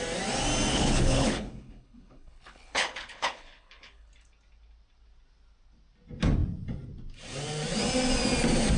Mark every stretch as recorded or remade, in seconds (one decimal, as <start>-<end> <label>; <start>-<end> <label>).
0.0-0.7 recorded; 0.7-4.1 remade; 4.1-8.8 recorded